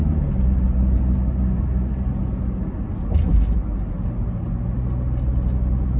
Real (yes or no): yes